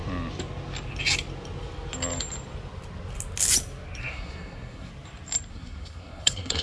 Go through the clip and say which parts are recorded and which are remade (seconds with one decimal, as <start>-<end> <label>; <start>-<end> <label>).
0.0-4.0 recorded; 4.0-4.9 remade; 4.9-5.5 recorded; 5.5-6.6 remade

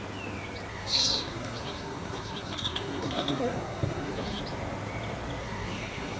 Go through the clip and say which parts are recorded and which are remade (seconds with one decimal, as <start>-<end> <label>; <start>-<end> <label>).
0.0-0.7 recorded; 0.7-4.4 remade; 4.4-5.4 recorded; 5.4-6.2 remade

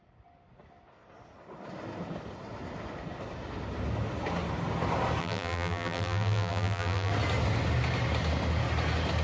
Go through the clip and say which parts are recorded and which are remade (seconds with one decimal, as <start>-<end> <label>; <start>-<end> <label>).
0.0-5.2 recorded; 5.2-7.1 remade; 7.1-9.2 recorded

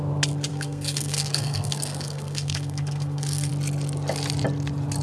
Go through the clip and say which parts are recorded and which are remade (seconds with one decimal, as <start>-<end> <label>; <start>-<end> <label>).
0.0-0.5 recorded; 0.5-3.5 remade; 3.5-5.0 recorded

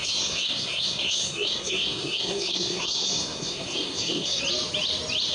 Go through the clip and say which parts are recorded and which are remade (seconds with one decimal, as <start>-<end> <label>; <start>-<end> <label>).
0.0-4.4 remade; 4.4-5.3 recorded

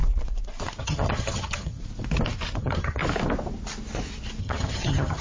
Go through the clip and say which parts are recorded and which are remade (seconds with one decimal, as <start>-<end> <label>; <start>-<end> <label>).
0.0-0.8 recorded; 0.8-1.8 remade; 1.8-2.6 recorded; 2.6-3.0 remade; 3.0-4.4 recorded; 4.4-5.2 remade

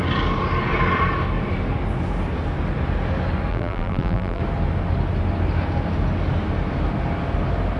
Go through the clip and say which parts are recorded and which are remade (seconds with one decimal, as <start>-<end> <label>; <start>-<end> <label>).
0.0-3.5 recorded; 3.5-4.4 remade; 4.4-7.8 recorded

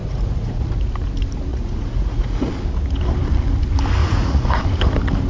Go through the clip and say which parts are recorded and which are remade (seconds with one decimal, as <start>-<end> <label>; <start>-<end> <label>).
0.0-0.8 remade; 0.8-1.5 recorded; 1.5-2.5 remade; 2.5-4.0 recorded; 4.0-4.6 remade; 4.6-5.3 recorded